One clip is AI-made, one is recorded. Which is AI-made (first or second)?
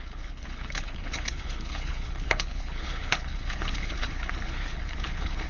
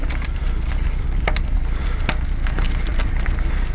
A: first